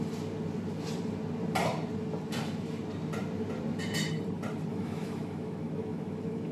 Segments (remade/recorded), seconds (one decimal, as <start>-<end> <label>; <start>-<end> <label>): 0.0-4.7 recorded; 4.7-6.5 remade